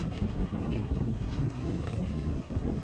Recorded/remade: remade